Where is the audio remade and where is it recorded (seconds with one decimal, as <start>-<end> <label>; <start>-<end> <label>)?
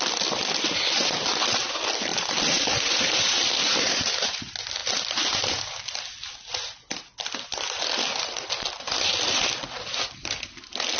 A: 0.0-2.1 recorded; 2.1-2.7 remade; 2.7-3.6 recorded; 3.6-4.1 remade; 4.1-11.0 recorded